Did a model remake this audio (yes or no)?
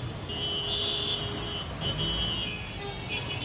no